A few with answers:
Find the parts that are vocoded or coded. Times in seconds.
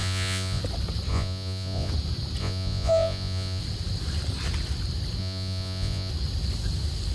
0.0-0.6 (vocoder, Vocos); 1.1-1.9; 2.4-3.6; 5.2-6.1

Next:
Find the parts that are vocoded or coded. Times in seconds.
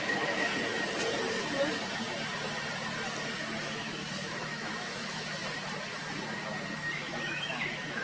0.0-0.5 (autoencoder, DAC-VAE); 3.6-5.4; 6.7-8.0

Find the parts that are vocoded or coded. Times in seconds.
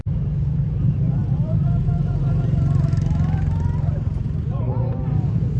0.0-5.6 (vocoder, BigVGAN v2)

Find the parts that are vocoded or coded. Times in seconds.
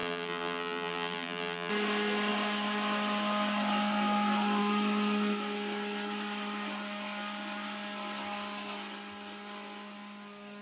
0.0-1.7 (vocoder, BigVGAN v2)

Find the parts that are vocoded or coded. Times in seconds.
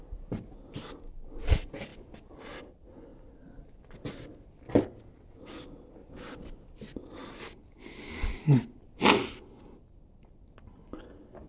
1.9-2.6 (vocoder, BigVGAN v2); 3.1-4.2; 6.0-6.7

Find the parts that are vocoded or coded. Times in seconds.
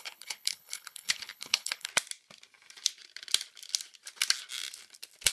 0.0-1.9 (codec, HILCodec)